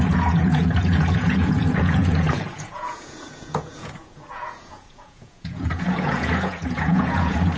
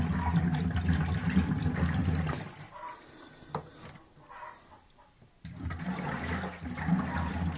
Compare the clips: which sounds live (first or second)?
second